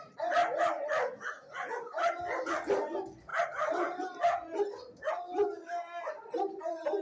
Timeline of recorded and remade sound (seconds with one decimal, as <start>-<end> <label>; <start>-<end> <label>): 0.0-7.0 recorded